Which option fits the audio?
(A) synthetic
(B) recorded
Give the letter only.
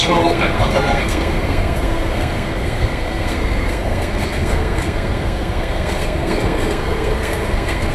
A